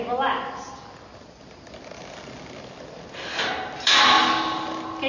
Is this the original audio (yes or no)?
yes